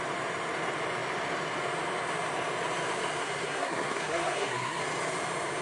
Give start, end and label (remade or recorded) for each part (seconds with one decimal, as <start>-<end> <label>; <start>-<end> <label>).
0.0-3.2 recorded; 3.2-4.8 remade; 4.8-5.6 recorded